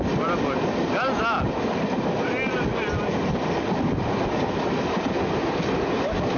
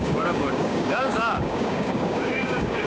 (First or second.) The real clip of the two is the first